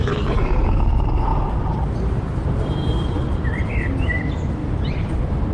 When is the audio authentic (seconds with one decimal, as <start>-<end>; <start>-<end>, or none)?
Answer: 0.0-5.5